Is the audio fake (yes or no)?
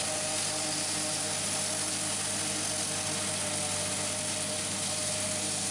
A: no